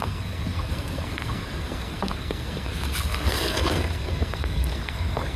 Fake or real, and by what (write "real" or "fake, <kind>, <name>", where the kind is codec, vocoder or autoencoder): fake, codec, SNAC